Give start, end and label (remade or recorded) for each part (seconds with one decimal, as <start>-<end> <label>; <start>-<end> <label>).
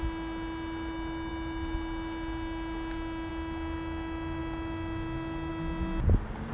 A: 0.0-6.5 recorded